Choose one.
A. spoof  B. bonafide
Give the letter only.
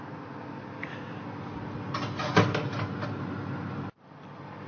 B